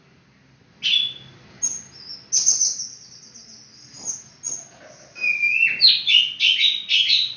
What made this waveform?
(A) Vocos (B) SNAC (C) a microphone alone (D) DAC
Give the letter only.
C